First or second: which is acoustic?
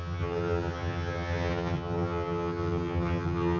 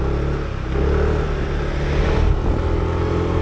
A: second